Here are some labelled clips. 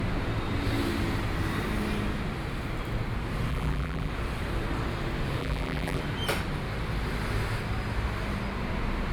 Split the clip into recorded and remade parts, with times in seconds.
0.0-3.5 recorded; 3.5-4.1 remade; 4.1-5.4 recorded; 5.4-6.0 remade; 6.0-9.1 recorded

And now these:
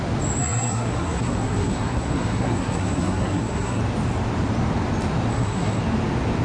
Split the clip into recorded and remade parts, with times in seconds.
0.0-0.4 recorded; 0.4-3.8 remade; 3.8-5.3 recorded; 5.3-5.8 remade; 5.8-6.4 recorded

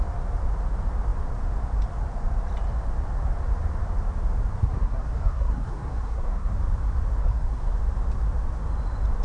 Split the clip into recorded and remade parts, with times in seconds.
0.0-4.6 recorded; 4.6-6.5 remade; 6.5-7.2 recorded; 7.2-7.8 remade; 7.8-9.2 recorded

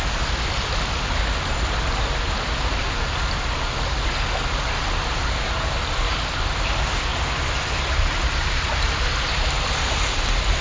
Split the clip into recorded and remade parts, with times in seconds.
0.0-10.6 recorded

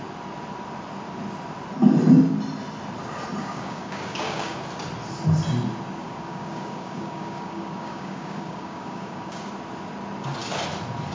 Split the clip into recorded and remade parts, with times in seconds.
0.0-3.4 recorded; 3.4-4.6 remade; 4.6-6.0 recorded; 6.0-9.5 remade; 9.5-11.1 recorded

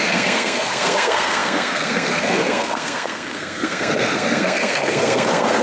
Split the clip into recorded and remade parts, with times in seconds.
0.0-5.6 remade

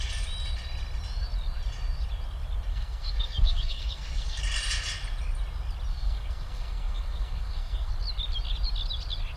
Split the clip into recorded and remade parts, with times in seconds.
0.0-2.7 recorded; 2.7-4.4 remade; 4.4-5.9 recorded; 5.9-7.9 remade; 7.9-9.4 recorded

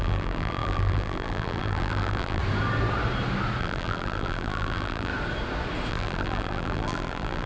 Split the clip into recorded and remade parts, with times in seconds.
0.0-2.4 remade; 2.4-3.6 recorded; 3.6-5.1 remade; 5.1-5.9 recorded; 5.9-7.5 remade